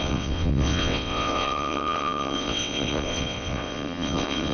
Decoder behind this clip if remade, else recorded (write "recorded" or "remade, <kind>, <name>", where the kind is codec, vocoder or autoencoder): remade, vocoder, WaveNeXt